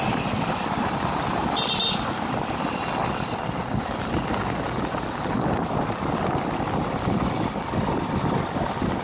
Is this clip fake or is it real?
real